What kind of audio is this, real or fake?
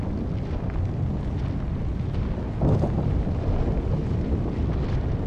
real